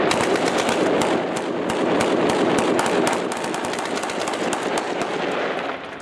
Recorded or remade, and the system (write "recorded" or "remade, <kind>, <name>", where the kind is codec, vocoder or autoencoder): recorded